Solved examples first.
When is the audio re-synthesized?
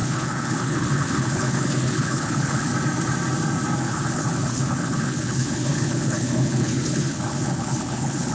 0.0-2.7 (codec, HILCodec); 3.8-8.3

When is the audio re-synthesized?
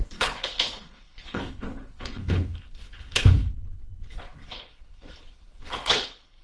0.0-6.4 (codec, HILCodec)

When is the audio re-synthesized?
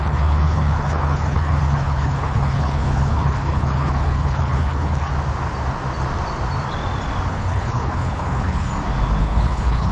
0.0-5.1 (codec, HILCodec); 7.3-8.7; 9.2-9.9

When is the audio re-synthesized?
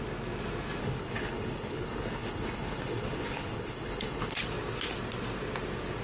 0.8-4.4 (codec, HILCodec)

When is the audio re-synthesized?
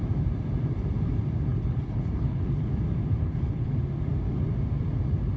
1.5-2.7 (codec, HILCodec); 3.2-3.7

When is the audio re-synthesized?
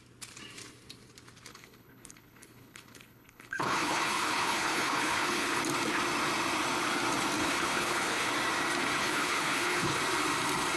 1.5-5.6 (codec, HILCodec); 7.4-8.3; 9.0-10.0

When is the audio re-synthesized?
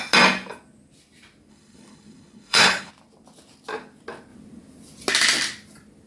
1.5-2.9 (codec, HILCodec)